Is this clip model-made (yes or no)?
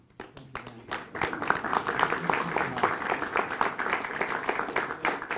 no